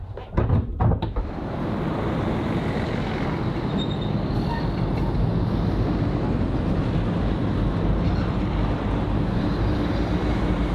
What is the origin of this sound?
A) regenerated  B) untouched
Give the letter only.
B